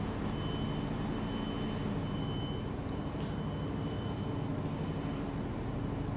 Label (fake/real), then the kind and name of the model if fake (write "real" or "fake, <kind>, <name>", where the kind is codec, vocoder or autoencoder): real